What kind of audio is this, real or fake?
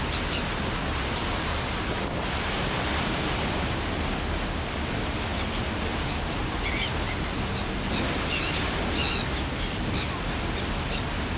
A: real